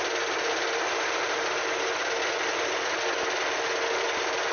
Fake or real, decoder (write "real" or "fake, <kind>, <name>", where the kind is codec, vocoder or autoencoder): real